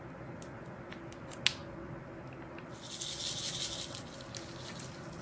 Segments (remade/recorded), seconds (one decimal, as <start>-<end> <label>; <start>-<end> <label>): 0.0-5.2 recorded